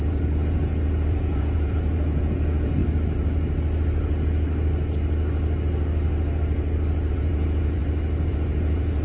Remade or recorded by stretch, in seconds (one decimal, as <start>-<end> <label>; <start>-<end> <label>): 0.0-2.8 remade; 2.8-7.1 recorded; 7.1-7.8 remade; 7.8-8.3 recorded; 8.3-9.0 remade